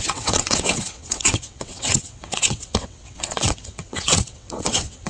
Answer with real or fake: fake